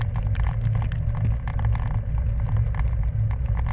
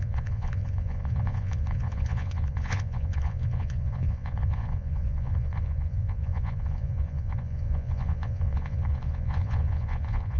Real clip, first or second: first